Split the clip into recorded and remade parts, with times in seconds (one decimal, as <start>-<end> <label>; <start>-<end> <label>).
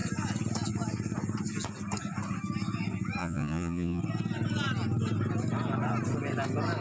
0.0-3.2 recorded; 3.2-4.0 remade; 4.0-6.8 recorded